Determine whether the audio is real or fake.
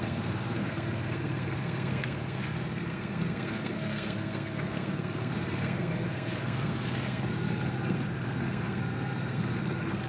fake